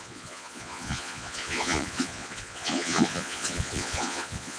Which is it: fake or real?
fake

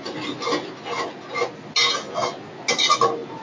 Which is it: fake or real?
real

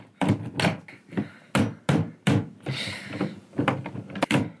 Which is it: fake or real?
real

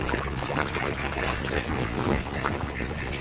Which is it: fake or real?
fake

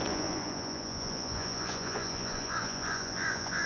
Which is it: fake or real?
fake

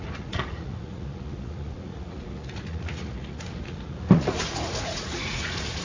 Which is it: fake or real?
fake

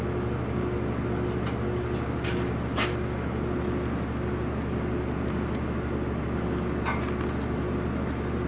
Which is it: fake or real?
real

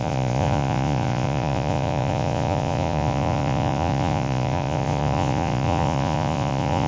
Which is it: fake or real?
fake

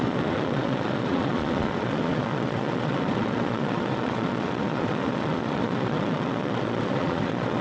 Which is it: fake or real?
fake